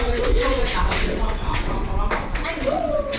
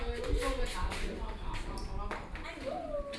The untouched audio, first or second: second